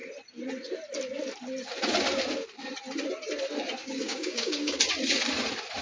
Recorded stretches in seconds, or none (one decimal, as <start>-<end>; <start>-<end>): 0.0-3.8; 4.8-5.8